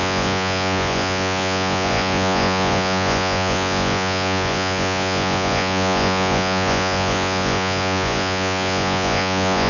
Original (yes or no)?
no